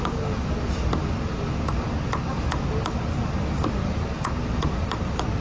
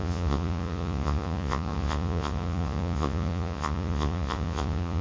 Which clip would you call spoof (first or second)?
second